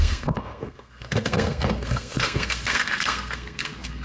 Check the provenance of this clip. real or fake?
fake